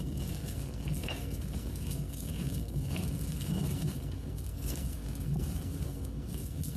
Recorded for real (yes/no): no